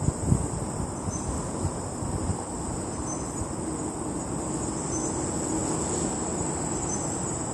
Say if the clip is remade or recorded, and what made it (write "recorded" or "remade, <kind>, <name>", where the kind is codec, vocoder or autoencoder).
recorded